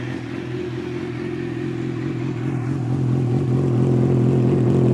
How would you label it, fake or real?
real